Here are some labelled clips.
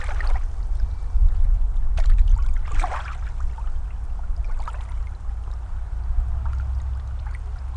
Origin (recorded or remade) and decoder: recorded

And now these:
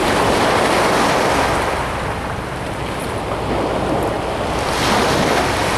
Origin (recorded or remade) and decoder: recorded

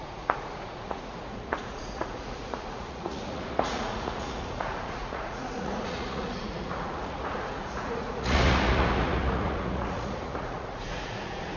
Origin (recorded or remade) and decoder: remade, vocoder, Vocos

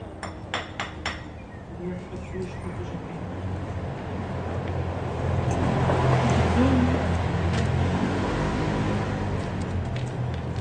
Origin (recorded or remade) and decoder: recorded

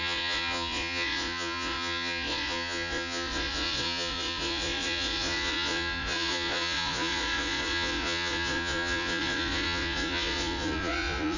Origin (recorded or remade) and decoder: remade, vocoder, Vocos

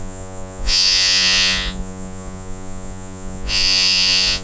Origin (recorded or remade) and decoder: remade, vocoder, Vocos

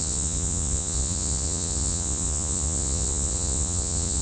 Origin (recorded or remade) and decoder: remade, vocoder, Vocos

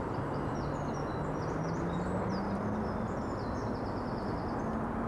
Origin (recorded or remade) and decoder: recorded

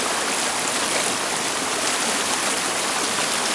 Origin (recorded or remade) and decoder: recorded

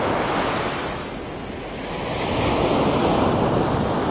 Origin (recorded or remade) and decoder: recorded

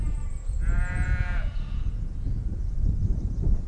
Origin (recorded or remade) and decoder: remade, vocoder, Vocos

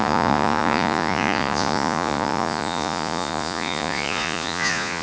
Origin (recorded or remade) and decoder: remade, vocoder, Vocos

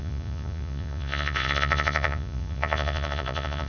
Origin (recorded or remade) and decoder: remade, vocoder, Vocos